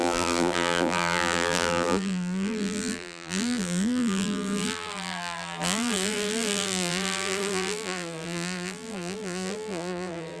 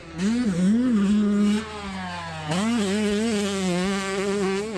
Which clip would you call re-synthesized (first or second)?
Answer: first